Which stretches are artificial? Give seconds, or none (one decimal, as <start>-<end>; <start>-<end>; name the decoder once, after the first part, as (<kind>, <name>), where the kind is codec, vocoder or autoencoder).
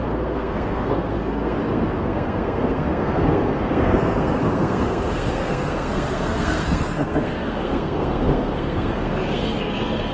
0.0-10.1 (codec, SNAC)